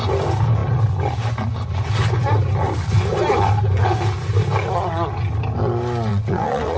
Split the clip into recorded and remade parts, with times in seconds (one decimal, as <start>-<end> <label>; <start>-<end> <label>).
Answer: 0.0-6.1 recorded; 6.1-6.8 remade